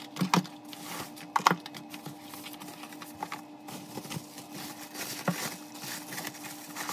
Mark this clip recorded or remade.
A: recorded